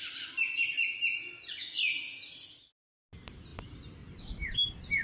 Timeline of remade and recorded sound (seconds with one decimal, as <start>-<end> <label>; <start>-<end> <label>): 0.0-5.0 recorded